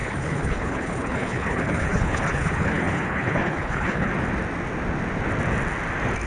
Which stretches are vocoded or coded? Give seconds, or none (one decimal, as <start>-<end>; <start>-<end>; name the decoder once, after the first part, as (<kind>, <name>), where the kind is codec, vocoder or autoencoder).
0.0-4.1 (codec, HILCodec)